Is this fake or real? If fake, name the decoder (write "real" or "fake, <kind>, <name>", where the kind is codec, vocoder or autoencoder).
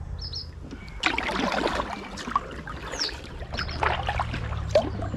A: real